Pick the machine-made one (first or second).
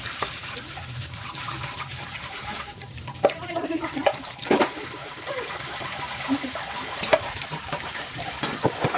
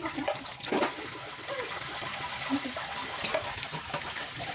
first